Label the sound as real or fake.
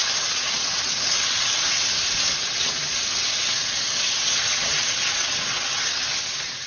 fake